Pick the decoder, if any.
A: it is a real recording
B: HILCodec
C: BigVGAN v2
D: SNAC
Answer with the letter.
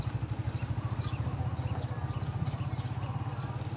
A